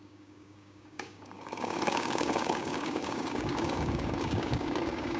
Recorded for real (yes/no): no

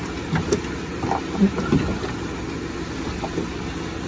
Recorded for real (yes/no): yes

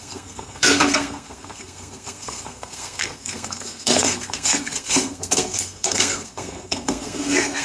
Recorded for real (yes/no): no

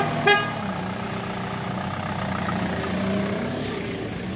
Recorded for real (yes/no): yes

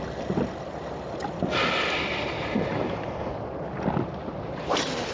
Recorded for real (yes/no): yes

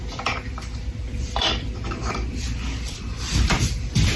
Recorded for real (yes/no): no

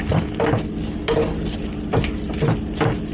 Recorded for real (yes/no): yes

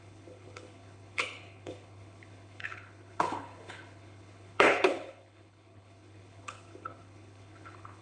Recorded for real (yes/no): no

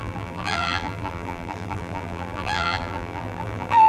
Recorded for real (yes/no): no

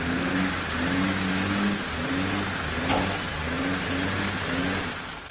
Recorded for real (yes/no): yes